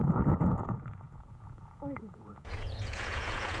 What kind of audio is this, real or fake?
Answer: fake